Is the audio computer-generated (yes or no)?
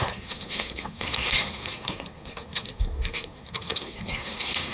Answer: yes